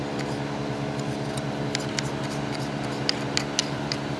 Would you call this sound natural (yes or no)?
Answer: yes